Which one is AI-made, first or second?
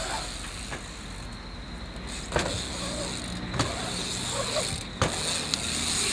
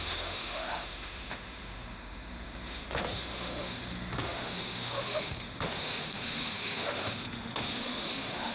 second